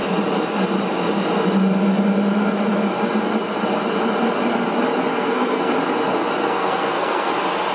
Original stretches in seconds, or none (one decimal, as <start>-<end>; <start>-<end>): 0.0-5.1; 5.7-6.4; 7.3-7.7